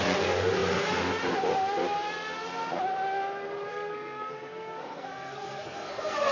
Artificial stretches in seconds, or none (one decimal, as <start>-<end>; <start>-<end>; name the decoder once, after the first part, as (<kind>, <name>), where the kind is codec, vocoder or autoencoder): 3.7-6.3 (codec, SNAC)